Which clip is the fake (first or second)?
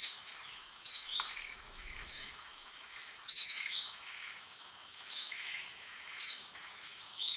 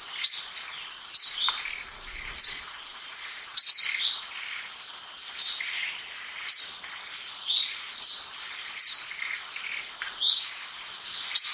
first